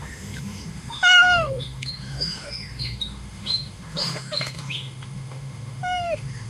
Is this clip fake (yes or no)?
yes